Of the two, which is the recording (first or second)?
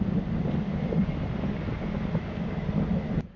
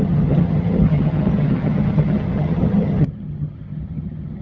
first